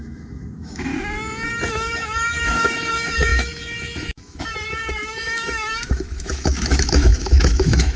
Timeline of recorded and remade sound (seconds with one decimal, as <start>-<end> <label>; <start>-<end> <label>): 0.0-0.9 remade; 0.9-1.7 recorded; 1.7-8.0 remade